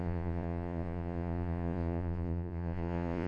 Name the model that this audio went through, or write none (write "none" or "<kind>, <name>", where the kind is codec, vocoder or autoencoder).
vocoder, Vocos